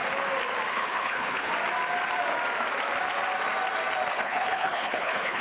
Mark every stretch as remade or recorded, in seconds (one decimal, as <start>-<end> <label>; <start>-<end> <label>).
0.0-0.7 recorded; 0.7-1.5 remade; 1.5-4.1 recorded; 4.1-5.4 remade